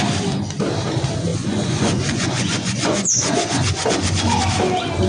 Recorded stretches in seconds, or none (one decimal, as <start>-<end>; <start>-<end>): 0.0-1.3; 4.4-5.1